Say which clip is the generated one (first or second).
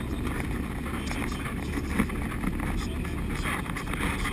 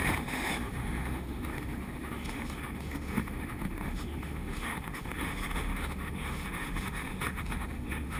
second